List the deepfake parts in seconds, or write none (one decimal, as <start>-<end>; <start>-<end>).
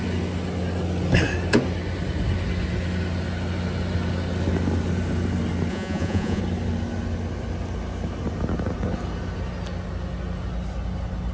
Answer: 5.7-6.4